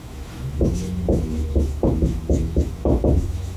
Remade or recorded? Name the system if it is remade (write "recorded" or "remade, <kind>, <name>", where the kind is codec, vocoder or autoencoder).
remade, autoencoder, DAC-VAE